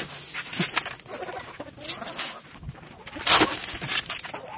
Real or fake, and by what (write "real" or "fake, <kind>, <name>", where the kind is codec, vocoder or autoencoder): real